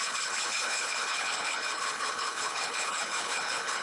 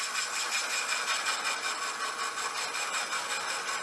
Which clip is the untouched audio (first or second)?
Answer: second